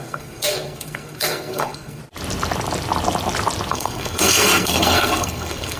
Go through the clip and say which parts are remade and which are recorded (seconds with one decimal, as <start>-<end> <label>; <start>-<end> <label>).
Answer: 0.0-2.0 remade; 2.0-3.7 recorded; 3.7-5.8 remade